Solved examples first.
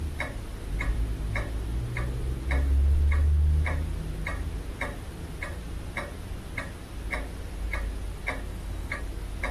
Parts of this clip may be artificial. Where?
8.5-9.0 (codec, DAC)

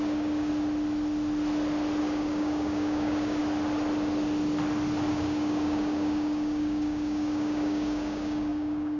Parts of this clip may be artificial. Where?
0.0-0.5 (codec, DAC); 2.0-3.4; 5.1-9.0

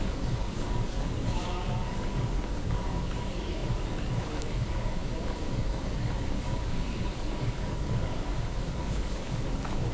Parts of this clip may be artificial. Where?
0.0-9.9 (codec, DAC)

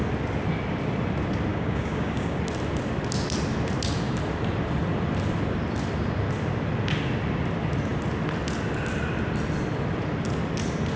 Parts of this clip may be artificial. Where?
1.5-2.4 (codec, DAC)